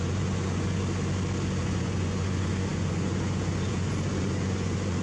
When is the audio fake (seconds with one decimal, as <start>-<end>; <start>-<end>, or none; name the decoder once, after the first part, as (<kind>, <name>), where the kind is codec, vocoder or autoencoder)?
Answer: 0.0-0.8 (vocoder, Vocos); 1.6-5.0